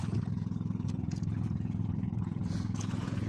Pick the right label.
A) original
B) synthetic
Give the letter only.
B